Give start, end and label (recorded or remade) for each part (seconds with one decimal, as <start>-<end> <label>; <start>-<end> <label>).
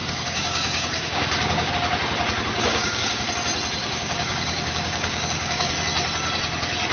0.0-1.7 remade; 1.7-2.7 recorded; 2.7-3.3 remade; 3.3-3.8 recorded; 3.8-5.7 remade; 5.7-6.9 recorded